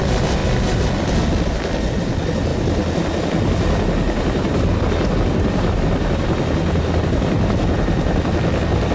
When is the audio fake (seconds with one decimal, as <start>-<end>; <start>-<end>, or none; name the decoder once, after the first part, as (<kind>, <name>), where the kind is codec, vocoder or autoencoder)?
none